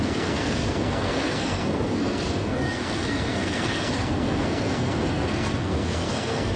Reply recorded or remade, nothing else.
remade